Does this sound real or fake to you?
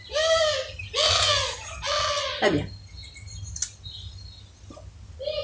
real